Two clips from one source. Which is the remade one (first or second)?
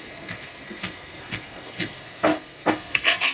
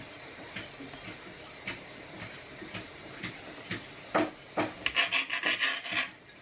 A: first